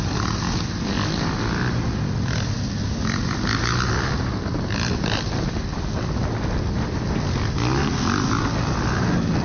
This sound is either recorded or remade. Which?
recorded